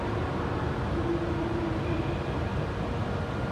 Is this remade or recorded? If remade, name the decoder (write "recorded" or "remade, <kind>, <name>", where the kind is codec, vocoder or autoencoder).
recorded